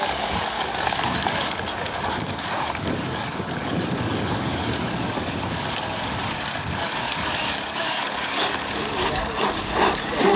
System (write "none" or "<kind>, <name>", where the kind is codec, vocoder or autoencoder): codec, DAC